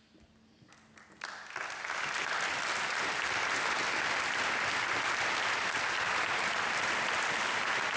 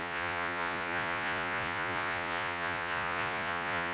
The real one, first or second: first